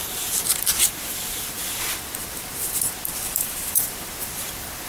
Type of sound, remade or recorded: remade